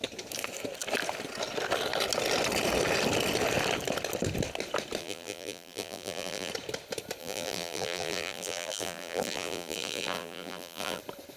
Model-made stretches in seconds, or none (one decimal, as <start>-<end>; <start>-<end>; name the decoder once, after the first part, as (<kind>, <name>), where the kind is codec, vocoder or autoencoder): 5.0-6.5 (vocoder, BigVGAN v2); 7.2-11.0